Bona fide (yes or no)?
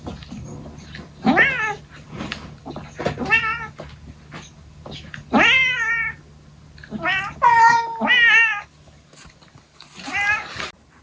yes